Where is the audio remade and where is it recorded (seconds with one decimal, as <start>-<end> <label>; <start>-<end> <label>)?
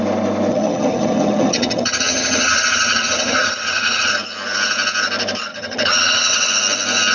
0.0-0.5 recorded; 0.5-4.1 remade; 4.1-5.5 recorded; 5.5-6.5 remade; 6.5-7.1 recorded